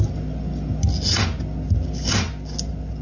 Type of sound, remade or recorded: recorded